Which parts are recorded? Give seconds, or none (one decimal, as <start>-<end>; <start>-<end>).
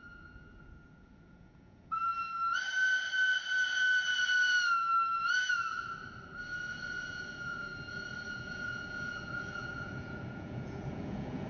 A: 2.1-6.7; 7.7-8.3